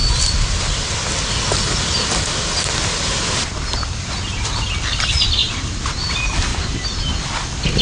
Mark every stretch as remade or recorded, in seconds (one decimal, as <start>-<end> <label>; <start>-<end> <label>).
0.0-5.4 recorded; 5.4-5.9 remade; 5.9-7.8 recorded